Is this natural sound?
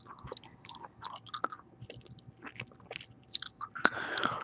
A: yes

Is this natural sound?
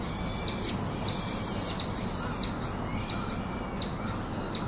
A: yes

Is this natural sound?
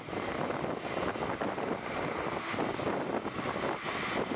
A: yes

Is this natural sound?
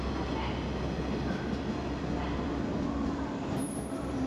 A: yes